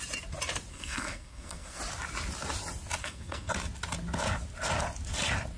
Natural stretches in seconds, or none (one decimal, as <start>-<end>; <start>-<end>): 0.0-0.7; 1.8-3.0; 3.5-5.6